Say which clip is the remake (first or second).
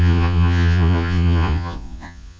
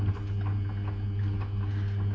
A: first